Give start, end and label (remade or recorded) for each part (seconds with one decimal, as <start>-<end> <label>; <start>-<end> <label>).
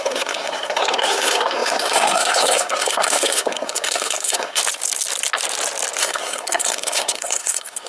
0.0-4.6 remade; 4.6-6.0 recorded; 6.0-7.9 remade